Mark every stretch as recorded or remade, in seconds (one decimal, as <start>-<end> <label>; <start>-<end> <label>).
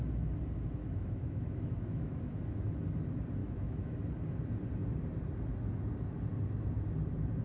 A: 0.0-0.8 recorded; 0.8-2.2 remade; 2.2-3.4 recorded; 3.4-4.0 remade; 4.0-7.4 recorded